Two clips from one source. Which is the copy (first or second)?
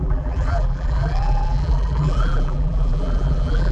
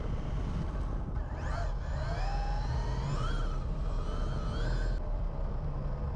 first